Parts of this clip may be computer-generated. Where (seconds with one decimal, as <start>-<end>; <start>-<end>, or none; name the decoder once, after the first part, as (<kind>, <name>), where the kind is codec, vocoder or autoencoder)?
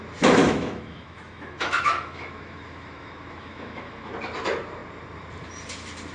0.4-4.1 (autoencoder, DAC-VAE)